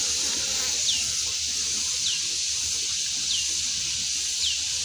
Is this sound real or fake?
real